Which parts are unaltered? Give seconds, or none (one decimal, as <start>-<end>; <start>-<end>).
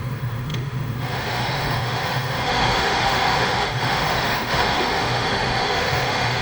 none